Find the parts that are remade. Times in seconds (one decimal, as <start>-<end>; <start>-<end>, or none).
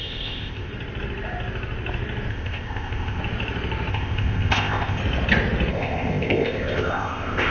0.0-0.7; 2.3-3.2; 3.9-5.0; 5.7-7.5